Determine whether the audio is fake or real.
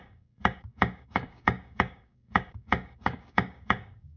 fake